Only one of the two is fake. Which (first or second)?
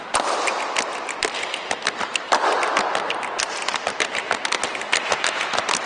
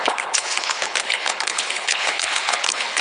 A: second